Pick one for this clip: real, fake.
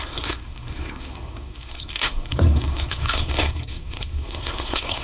fake